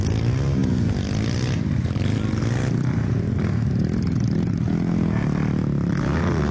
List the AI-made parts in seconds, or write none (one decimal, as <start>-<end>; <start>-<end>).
none